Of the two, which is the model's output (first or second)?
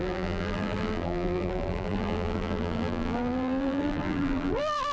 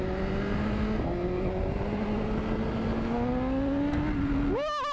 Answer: first